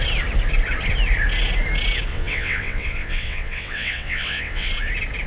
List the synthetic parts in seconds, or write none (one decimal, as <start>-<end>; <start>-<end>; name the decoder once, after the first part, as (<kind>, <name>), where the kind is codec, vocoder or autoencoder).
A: 2.1-4.7 (vocoder, WaveNeXt)